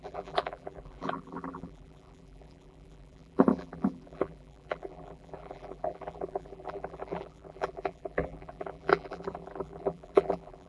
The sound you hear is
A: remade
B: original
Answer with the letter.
A